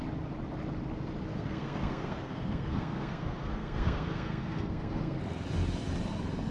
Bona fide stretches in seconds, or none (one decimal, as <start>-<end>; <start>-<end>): 0.0-1.3; 5.2-6.5